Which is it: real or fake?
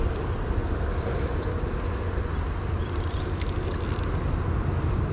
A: real